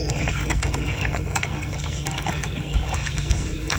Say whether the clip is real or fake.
fake